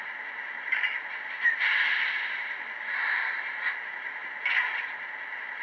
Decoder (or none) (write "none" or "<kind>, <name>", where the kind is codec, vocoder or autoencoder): vocoder, BigVGAN v2